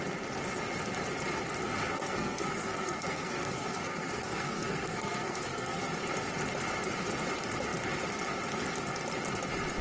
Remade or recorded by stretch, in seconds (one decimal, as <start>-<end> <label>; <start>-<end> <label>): 0.0-1.9 recorded; 1.9-5.9 remade; 5.9-9.8 recorded